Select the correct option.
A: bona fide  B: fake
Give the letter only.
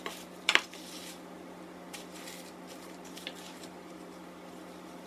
B